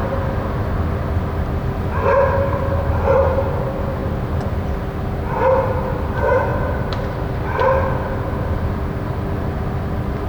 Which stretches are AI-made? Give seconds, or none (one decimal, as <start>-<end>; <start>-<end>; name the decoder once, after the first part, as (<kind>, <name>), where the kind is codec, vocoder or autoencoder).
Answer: 6.5-7.2 (vocoder, BigVGAN v2)